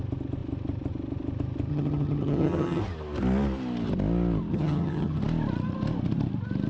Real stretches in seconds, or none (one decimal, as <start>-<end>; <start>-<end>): 0.0-1.7; 2.8-4.5; 5.2-6.7